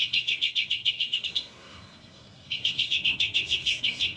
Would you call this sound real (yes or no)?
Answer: no